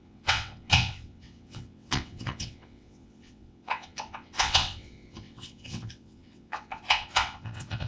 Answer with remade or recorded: remade